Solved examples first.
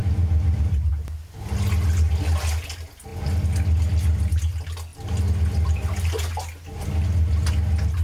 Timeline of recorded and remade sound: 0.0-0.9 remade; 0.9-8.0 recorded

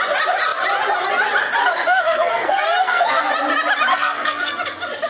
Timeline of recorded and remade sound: 0.0-1.6 recorded; 1.6-3.3 remade; 3.3-3.9 recorded; 3.9-4.5 remade; 4.5-5.1 recorded

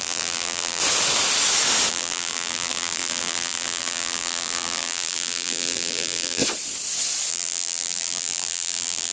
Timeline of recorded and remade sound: 0.0-0.8 remade; 0.8-1.9 recorded; 1.9-6.4 remade; 6.4-7.3 recorded; 7.3-9.1 remade

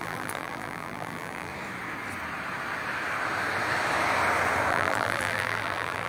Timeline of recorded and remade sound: 0.0-1.5 remade; 1.5-4.7 recorded; 4.7-6.1 remade